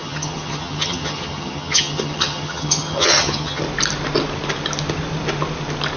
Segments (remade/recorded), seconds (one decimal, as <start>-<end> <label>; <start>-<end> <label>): 0.0-3.6 remade; 3.6-6.0 recorded